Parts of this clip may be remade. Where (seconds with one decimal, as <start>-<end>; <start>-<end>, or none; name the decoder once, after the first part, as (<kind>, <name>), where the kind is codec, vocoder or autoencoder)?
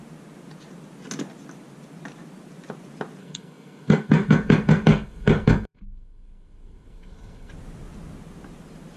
3.2-7.5 (codec, SNAC)